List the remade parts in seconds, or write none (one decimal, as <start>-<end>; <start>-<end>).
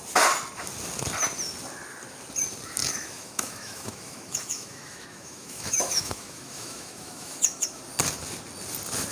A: 2.8-7.8